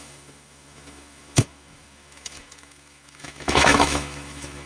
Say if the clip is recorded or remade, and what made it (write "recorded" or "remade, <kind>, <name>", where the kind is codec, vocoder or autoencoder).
remade, autoencoder, DAC-VAE